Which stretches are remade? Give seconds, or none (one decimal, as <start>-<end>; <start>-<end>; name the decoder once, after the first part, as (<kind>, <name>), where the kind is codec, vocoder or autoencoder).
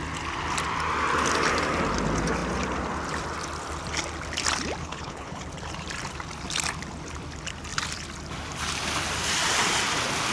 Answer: 4.8-5.4 (codec, HILCodec)